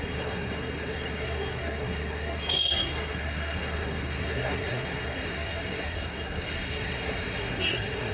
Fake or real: fake